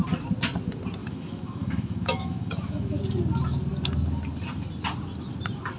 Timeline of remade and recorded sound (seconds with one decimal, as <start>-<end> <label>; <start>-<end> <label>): 0.0-1.0 recorded; 1.0-3.0 remade; 3.0-5.8 recorded